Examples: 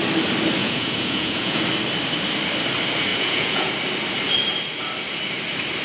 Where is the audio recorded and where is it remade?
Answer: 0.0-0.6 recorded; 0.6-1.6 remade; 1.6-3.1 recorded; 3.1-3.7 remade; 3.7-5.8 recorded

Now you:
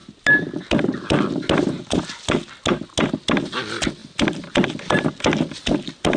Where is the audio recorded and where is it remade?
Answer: 0.0-6.2 recorded

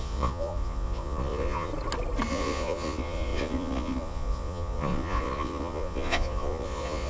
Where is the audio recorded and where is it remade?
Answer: 0.0-1.7 remade; 1.7-2.3 recorded; 2.3-7.1 remade

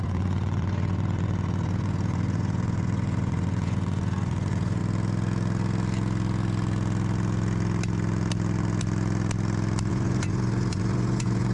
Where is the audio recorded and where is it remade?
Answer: 0.0-4.8 remade; 4.8-9.9 recorded; 9.9-11.5 remade

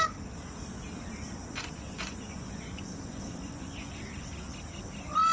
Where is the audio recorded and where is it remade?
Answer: 0.0-1.4 recorded; 1.4-3.9 remade; 3.9-5.3 recorded